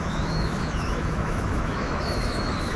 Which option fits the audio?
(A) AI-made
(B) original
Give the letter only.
A